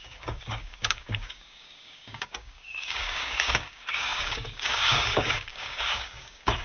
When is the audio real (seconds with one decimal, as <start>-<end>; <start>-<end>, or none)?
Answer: none